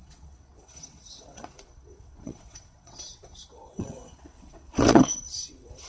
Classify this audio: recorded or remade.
remade